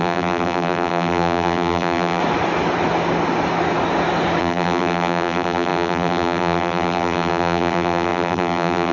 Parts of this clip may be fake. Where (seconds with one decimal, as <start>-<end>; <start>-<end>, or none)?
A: 0.0-2.2; 4.4-8.9